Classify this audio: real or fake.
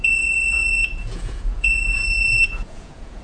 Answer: fake